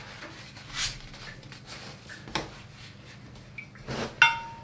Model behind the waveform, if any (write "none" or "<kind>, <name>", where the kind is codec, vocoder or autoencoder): none